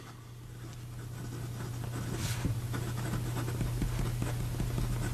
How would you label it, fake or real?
real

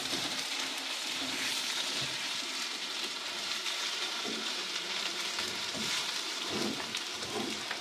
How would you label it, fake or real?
fake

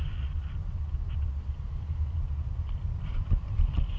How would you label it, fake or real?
real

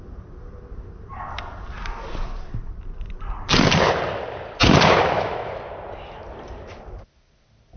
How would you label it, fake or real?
real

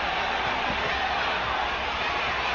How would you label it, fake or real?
real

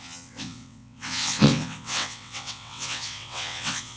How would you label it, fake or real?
fake